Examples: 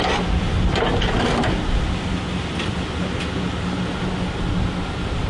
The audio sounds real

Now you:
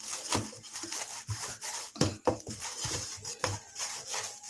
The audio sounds real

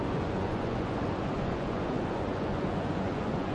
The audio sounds fake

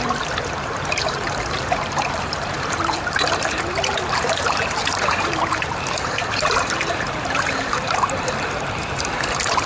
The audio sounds fake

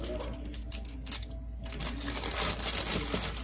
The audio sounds real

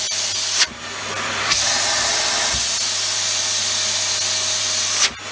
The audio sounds real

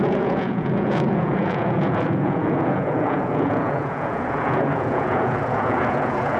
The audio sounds fake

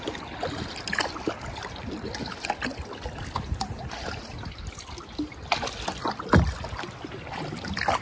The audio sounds real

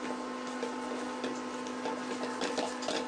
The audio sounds real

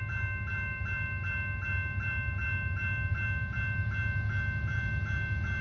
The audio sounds real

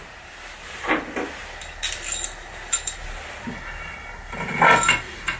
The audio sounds real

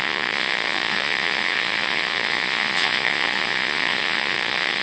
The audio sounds fake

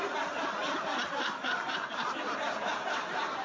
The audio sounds fake